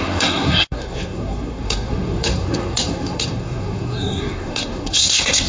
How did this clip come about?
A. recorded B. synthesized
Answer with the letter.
B